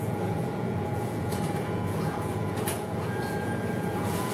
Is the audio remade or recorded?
remade